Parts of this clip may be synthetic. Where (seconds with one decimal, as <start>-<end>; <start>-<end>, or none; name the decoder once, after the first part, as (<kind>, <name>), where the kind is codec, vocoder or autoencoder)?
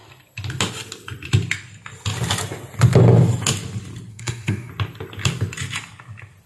4.1-4.7 (codec, SNAC)